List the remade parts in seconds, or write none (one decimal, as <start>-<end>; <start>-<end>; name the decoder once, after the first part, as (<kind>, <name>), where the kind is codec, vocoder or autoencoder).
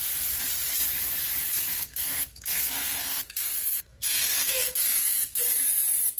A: 1.7-5.4 (codec, SNAC)